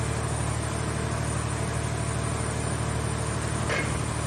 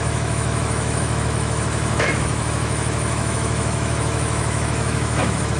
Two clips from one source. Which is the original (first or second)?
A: first